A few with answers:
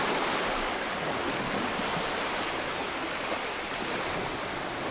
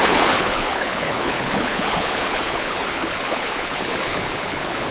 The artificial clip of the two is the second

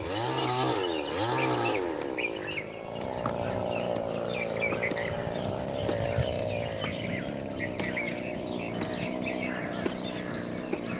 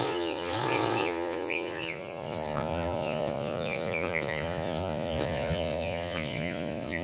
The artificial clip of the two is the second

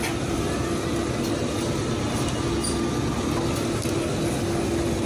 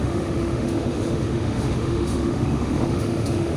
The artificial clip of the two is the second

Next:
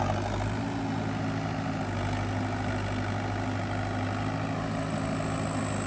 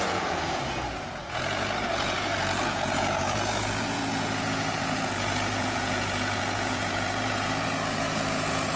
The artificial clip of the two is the second